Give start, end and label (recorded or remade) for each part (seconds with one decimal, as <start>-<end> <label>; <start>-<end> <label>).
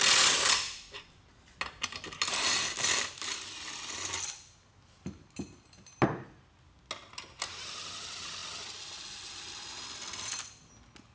0.0-11.1 recorded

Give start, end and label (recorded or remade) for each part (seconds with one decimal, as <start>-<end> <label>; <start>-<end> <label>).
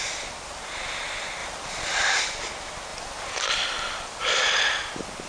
0.0-1.4 recorded; 1.4-2.1 remade; 2.1-2.9 recorded; 2.9-4.5 remade; 4.5-5.3 recorded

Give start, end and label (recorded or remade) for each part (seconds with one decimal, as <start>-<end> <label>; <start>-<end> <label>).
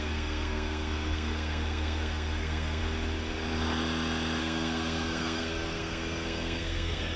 0.0-2.8 remade; 2.8-4.4 recorded; 4.4-7.2 remade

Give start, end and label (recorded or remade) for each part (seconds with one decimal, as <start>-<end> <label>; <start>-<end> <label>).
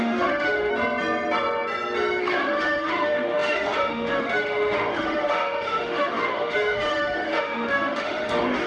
0.0-0.7 remade; 0.7-2.2 recorded; 2.2-8.7 remade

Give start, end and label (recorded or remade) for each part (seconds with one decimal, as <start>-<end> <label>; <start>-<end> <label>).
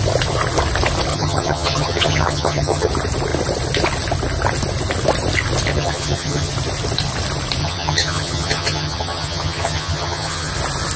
0.0-1.1 recorded; 1.1-2.9 remade; 2.9-5.7 recorded; 5.7-6.5 remade; 6.5-7.6 recorded; 7.6-10.5 remade; 10.5-11.0 recorded